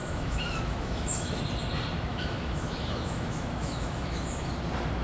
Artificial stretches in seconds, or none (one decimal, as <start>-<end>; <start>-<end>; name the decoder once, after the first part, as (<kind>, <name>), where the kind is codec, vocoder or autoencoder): 0.0-1.4 (autoencoder, DAC-VAE); 2.1-4.5